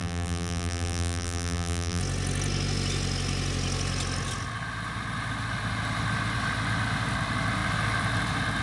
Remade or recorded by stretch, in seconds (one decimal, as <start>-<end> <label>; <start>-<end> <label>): 0.0-2.0 remade; 2.0-8.6 recorded